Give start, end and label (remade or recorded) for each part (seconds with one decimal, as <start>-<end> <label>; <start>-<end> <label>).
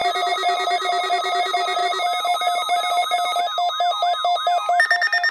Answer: 0.0-5.3 recorded